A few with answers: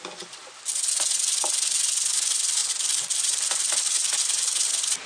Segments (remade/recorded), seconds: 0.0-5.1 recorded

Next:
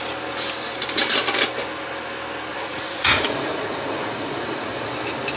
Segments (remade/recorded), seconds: 0.0-2.5 recorded; 2.5-4.9 remade; 4.9-5.4 recorded

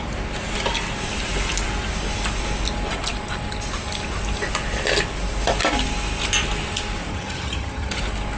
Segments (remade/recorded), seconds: 0.0-7.1 recorded; 7.1-8.0 remade; 8.0-8.4 recorded